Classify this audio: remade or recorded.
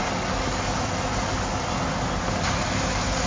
recorded